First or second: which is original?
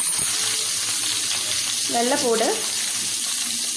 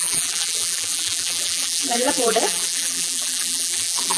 first